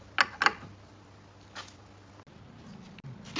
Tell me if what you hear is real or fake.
real